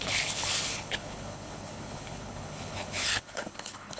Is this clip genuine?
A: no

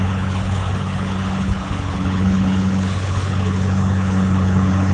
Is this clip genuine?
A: no